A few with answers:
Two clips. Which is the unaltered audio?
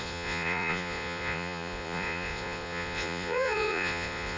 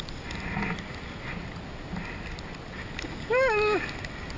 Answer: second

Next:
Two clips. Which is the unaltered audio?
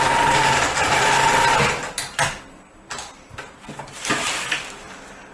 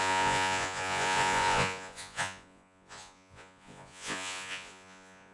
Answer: first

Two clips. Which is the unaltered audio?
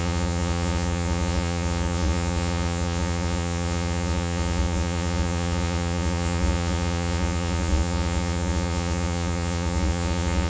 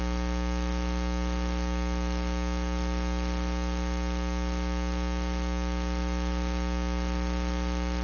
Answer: second